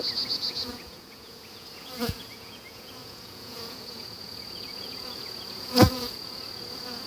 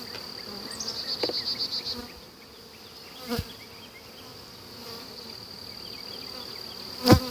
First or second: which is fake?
first